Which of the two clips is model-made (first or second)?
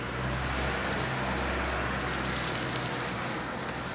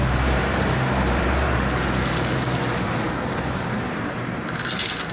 second